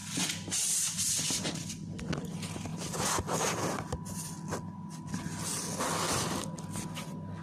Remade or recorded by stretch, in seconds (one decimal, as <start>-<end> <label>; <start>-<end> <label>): 0.0-7.4 recorded